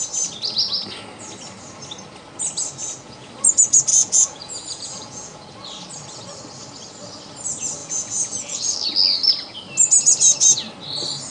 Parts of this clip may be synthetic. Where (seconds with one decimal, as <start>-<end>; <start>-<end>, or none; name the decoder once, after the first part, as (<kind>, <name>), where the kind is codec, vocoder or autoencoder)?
2.8-3.3 (vocoder, Vocos); 3.9-5.4; 7.8-8.6